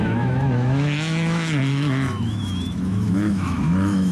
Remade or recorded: remade